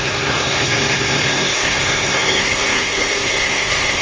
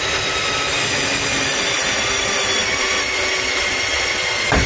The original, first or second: second